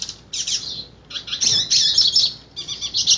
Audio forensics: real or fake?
real